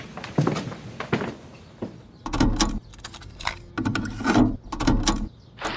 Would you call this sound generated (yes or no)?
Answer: no